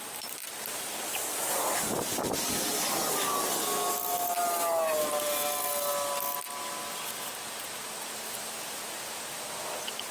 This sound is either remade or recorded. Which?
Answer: recorded